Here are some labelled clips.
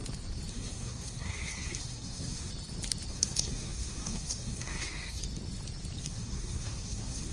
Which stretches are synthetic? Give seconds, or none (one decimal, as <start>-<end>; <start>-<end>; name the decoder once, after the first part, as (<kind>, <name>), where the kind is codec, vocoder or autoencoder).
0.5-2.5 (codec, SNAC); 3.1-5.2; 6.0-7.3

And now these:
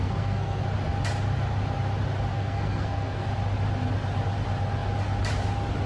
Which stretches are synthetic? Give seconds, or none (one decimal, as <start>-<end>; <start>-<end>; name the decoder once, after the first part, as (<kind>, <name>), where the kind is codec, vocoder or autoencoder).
0.0-0.6 (codec, SNAC); 2.3-3.3

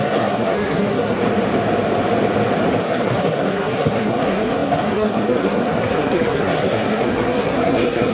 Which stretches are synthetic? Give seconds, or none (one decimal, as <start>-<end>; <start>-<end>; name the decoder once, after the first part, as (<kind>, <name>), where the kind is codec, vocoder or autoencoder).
0.0-1.2 (codec, SNAC); 2.8-8.1

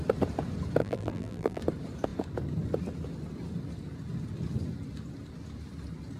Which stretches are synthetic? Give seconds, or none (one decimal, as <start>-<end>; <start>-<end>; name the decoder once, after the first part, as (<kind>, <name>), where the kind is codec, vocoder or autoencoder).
0.8-1.6 (vocoder, BigVGAN v2)